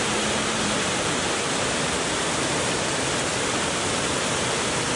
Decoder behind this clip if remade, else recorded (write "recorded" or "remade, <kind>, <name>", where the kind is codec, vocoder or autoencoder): recorded